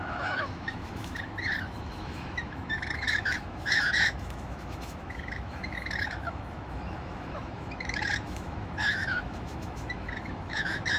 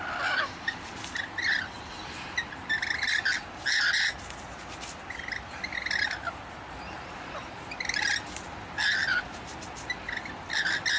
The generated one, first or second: first